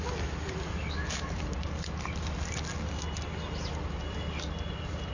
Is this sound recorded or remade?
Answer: recorded